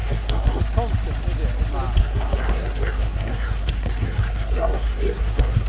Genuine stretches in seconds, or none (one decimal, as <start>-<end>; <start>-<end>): 0.6-2.0